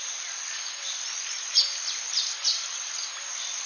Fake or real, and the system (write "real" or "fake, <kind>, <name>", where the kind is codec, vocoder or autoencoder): real